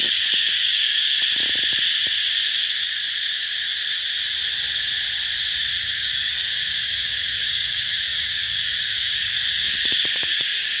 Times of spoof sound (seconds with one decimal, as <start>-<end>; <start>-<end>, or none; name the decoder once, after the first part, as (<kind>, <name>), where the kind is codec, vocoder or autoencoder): 0.0-1.2 (codec, DAC); 5.8-10.8